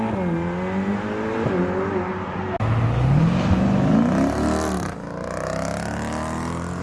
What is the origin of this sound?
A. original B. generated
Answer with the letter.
A